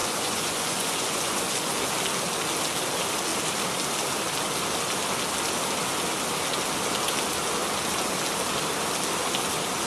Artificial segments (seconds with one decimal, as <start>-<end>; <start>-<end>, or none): 0.0-1.8